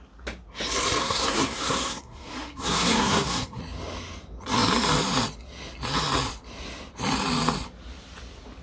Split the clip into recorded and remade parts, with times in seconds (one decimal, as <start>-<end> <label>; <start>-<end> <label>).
0.0-1.0 recorded; 1.0-3.6 remade; 3.6-8.6 recorded